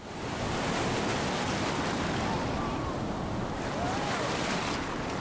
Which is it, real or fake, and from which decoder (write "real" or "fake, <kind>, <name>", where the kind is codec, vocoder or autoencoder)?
real